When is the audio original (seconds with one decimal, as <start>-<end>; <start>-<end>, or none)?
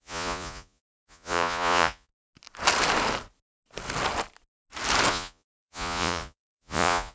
2.1-5.1